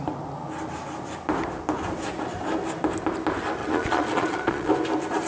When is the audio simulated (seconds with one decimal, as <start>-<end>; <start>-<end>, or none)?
3.6-4.7